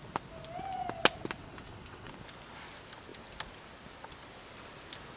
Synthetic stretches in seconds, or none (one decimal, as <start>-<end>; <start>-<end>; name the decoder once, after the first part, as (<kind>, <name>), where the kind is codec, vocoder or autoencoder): 1.4-2.1 (vocoder, WaveNeXt)